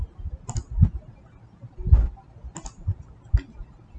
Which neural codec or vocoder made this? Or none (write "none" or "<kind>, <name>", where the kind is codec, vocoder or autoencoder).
none